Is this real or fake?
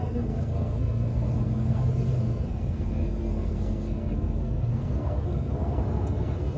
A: fake